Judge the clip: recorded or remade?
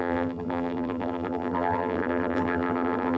remade